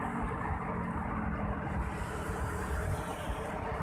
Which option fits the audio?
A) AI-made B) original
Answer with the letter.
B